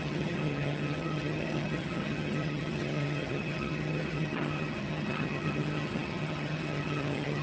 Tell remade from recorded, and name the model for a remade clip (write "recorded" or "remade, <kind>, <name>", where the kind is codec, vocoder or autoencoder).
remade, vocoder, HiFi-GAN